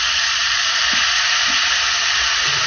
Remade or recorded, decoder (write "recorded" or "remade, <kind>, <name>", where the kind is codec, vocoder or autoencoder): recorded